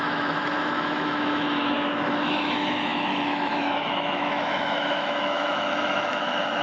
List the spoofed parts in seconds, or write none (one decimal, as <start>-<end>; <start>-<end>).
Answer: 0.0-6.6